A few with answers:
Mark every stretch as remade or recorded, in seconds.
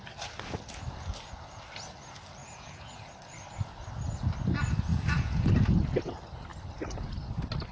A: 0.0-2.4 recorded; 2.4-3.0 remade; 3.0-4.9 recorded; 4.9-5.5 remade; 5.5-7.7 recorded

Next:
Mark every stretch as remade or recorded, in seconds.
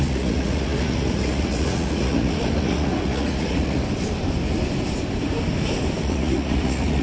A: 0.0-3.8 remade; 3.8-6.0 recorded; 6.0-7.0 remade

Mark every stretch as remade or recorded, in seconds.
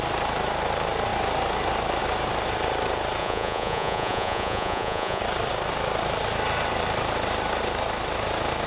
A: 0.0-3.2 recorded; 3.2-5.2 remade; 5.2-8.7 recorded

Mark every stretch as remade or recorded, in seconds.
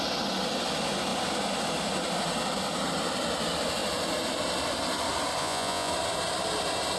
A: 0.0-5.4 recorded; 5.4-5.9 remade; 5.9-7.0 recorded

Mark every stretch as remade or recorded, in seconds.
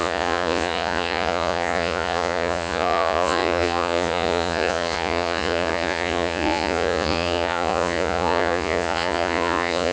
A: 0.0-9.9 remade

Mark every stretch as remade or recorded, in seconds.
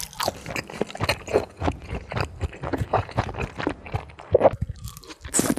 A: 0.0-1.3 recorded; 1.3-2.0 remade; 2.0-2.7 recorded; 2.7-3.3 remade; 3.3-5.6 recorded